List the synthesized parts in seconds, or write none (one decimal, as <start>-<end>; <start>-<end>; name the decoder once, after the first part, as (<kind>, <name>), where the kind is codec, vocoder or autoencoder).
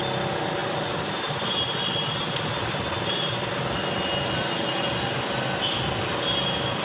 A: none